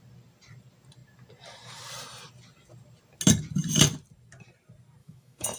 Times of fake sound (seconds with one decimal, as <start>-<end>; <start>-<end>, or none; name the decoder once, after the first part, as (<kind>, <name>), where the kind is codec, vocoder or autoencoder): 5.0-5.6 (autoencoder, DAC-VAE)